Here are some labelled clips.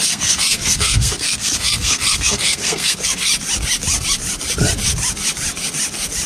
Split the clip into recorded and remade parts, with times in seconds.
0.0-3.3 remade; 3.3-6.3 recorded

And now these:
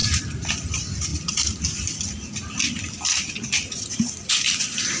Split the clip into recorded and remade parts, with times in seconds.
0.0-5.0 recorded

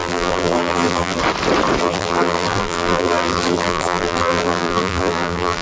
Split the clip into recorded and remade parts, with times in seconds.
0.0-1.2 remade; 1.2-1.8 recorded; 1.8-5.6 remade

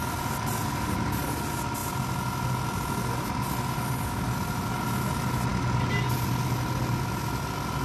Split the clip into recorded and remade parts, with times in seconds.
0.0-7.8 recorded

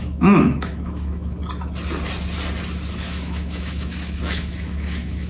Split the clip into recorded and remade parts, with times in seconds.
0.0-1.4 remade; 1.4-2.9 recorded; 2.9-5.3 remade

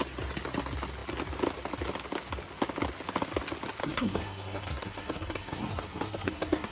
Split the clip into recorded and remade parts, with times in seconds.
0.0-3.8 recorded; 3.8-6.7 remade